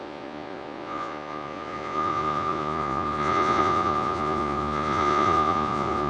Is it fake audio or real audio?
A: fake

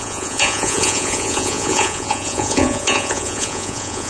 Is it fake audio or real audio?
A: fake